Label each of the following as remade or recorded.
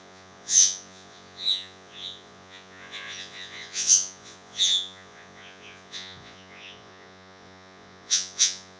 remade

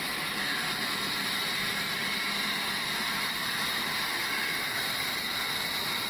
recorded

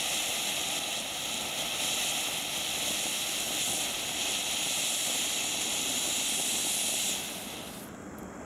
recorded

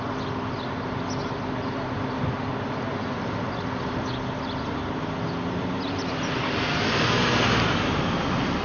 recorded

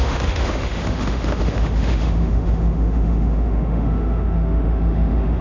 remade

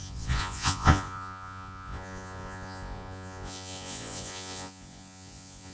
remade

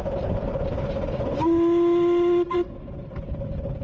recorded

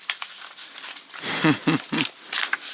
recorded